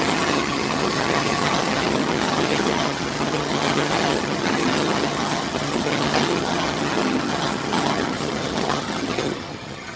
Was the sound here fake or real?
fake